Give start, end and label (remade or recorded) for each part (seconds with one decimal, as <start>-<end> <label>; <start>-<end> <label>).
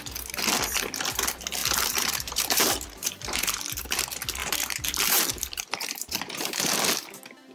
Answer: 0.0-1.6 recorded; 1.6-3.6 remade; 3.6-4.4 recorded; 4.4-6.7 remade; 6.7-7.5 recorded